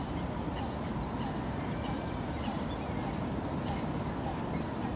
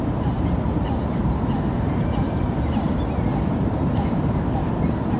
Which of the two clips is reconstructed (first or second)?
second